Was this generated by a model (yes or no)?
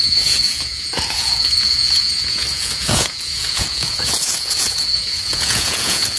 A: yes